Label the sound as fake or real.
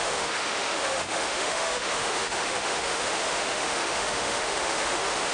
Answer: fake